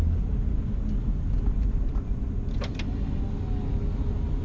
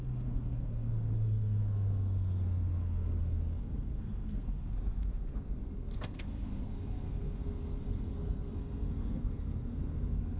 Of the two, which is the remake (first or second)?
second